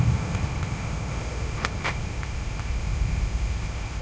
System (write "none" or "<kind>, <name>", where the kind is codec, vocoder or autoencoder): codec, ZipCodec